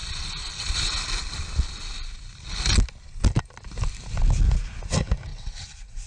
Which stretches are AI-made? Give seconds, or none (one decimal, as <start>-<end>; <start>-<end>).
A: 5.3-6.1